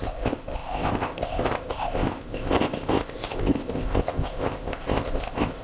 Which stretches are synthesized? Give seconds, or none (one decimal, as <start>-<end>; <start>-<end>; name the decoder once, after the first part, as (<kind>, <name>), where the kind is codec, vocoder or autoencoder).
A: 0.0-5.6 (codec, ZipCodec)